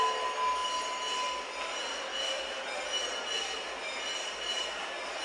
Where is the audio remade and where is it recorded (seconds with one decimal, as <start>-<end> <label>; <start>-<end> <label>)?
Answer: 0.0-5.2 recorded